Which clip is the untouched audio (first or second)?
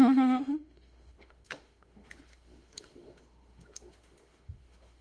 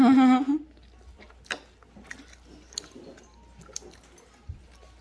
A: second